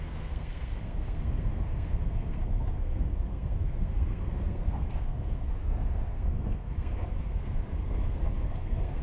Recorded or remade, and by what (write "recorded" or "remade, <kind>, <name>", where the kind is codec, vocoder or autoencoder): remade, codec, SNAC